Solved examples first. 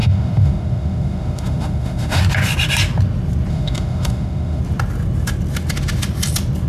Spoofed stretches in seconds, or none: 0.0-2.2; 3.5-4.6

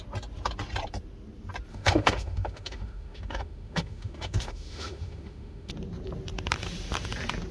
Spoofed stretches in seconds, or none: 1.7-5.7

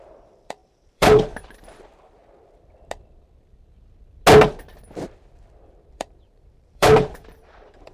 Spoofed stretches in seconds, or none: 0.0-2.2; 5.9-7.9

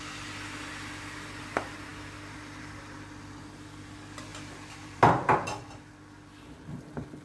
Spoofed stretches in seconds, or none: 4.3-5.1

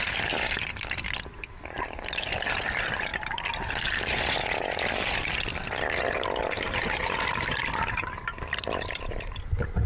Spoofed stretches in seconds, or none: 0.0-3.1; 4.2-9.9

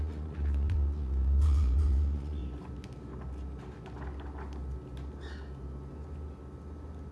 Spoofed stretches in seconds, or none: 0.0-2.4